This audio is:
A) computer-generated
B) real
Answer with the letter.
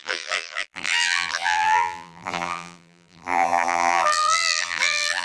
A